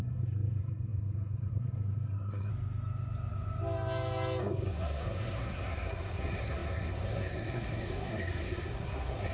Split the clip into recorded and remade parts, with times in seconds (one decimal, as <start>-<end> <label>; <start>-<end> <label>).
0.0-2.5 remade; 2.5-4.4 recorded; 4.4-9.3 remade